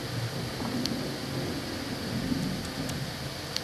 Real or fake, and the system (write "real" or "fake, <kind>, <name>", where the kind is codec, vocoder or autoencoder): real